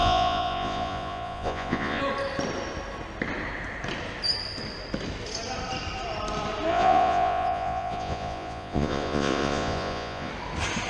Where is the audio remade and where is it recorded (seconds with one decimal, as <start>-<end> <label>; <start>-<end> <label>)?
0.0-2.0 remade; 2.0-6.7 recorded; 6.7-10.3 remade; 10.3-10.9 recorded